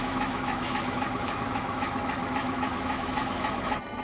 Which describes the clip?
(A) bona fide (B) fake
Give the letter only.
B